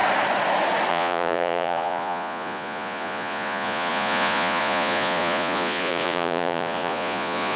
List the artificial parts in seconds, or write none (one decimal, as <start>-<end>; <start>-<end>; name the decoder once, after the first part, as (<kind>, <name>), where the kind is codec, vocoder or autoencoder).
0.9-7.6 (vocoder, Vocos)